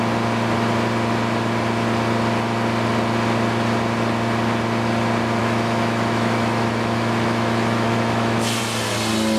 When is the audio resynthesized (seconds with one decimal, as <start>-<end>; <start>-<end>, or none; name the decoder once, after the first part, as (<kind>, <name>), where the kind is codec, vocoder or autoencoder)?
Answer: 5.4-8.6 (autoencoder, DAC-VAE)